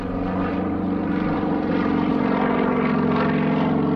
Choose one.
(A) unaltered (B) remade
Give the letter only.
A